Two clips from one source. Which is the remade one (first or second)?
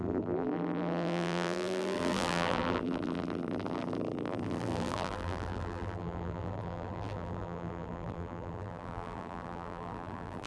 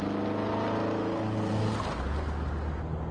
first